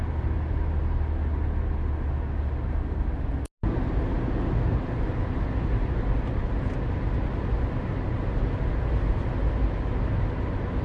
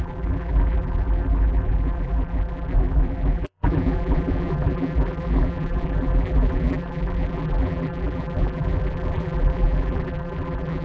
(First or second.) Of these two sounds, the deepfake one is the second